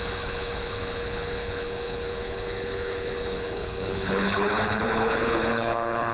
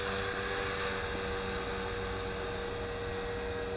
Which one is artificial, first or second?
first